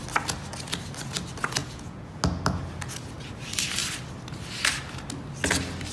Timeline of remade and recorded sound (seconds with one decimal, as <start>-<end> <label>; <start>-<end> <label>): 0.0-1.6 recorded; 1.6-2.2 remade; 2.2-5.9 recorded